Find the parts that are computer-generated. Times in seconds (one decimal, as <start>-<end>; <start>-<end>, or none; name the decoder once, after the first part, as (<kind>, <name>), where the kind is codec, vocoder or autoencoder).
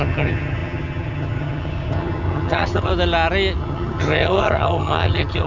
0.0-2.9 (vocoder, HiFi-GAN); 3.6-5.5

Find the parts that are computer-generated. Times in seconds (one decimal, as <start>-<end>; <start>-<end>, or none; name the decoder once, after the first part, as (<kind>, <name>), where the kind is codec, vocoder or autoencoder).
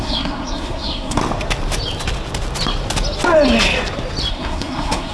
0.0-1.2 (codec, SNAC); 4.3-5.1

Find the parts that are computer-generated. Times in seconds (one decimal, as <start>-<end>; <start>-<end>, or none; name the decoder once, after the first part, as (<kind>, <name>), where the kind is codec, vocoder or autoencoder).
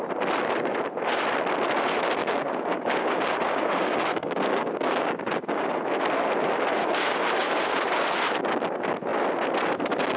2.2-5.8 (codec, DAC); 6.8-7.7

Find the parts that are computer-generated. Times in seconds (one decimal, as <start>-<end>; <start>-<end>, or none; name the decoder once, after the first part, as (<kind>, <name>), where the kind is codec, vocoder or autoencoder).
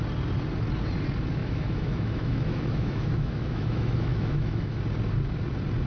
1.4-4.8 (autoencoder, DAC-VAE)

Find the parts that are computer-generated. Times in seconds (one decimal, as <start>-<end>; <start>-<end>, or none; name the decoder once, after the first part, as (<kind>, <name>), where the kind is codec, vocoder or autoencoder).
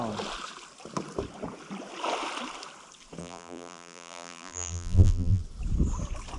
3.2-5.4 (vocoder, BigVGAN v2)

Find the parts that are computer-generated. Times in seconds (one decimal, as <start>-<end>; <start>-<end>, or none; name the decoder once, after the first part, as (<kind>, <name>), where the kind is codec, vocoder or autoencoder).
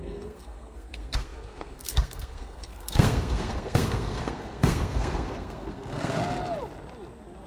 0.0-6.2 (codec, SNAC)